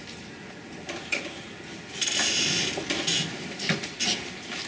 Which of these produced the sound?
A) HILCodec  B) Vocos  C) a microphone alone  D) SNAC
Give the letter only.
C